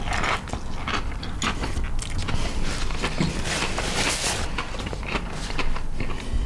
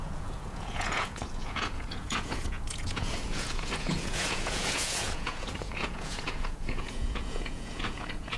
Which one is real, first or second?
first